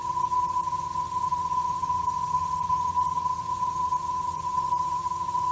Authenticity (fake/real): fake